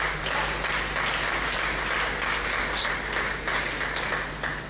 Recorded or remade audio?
recorded